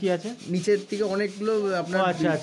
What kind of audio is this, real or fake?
real